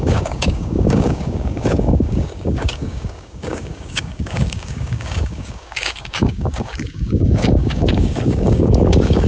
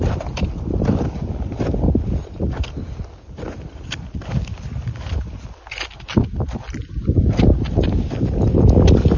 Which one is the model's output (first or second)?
first